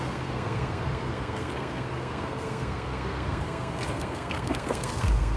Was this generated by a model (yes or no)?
yes